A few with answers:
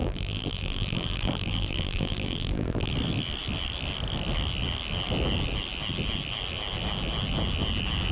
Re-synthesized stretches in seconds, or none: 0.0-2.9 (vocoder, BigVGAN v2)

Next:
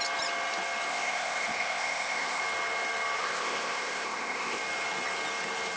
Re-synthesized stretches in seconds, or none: 0.9-2.4 (codec, ZipCodec); 3.2-4.6

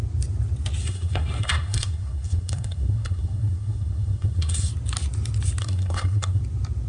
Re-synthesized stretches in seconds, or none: 0.8-4.7 (codec, SNAC); 5.6-6.4

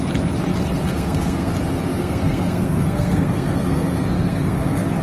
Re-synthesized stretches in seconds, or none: 0.9-1.5 (codec, SNAC); 1.9-5.0

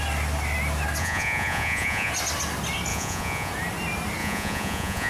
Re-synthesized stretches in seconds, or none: 1.0-2.1 (vocoder, Vocos); 2.9-3.5; 4.2-5.1